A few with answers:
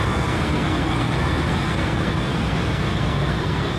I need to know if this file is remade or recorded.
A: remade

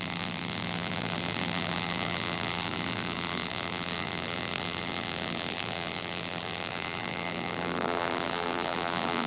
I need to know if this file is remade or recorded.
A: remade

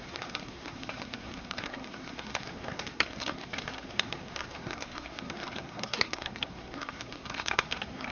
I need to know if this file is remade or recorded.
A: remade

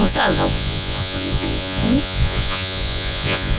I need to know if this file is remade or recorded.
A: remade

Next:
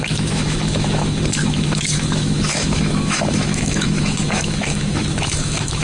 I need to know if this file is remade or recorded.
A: remade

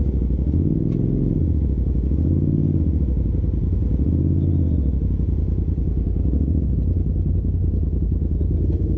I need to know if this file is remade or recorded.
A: recorded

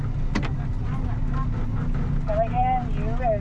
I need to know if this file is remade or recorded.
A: recorded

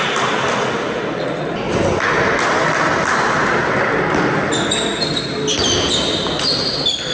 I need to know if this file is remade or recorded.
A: recorded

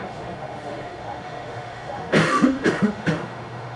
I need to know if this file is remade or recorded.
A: remade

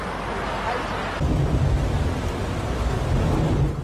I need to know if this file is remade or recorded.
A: recorded